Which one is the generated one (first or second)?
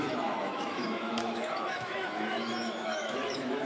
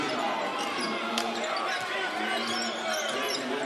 first